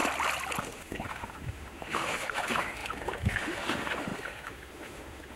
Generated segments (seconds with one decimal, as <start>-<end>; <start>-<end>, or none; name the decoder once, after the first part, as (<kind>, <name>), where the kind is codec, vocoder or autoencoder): 0.6-5.4 (autoencoder, DAC-VAE)